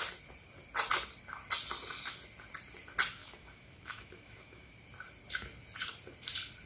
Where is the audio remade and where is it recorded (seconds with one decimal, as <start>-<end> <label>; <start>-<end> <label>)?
0.0-3.2 recorded; 3.2-4.7 remade; 4.7-6.7 recorded

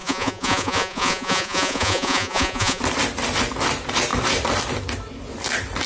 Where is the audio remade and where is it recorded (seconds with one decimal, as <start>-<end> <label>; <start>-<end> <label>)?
0.0-2.8 remade; 2.8-5.9 recorded

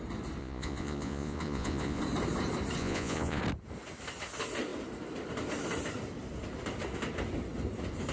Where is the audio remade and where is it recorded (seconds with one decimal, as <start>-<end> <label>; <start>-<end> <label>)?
0.0-0.4 recorded; 0.4-2.0 remade; 2.0-2.8 recorded; 2.8-3.4 remade; 3.4-8.1 recorded

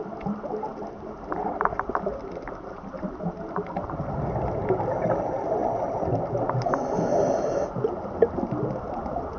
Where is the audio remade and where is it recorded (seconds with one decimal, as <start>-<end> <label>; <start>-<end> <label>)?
0.0-9.4 recorded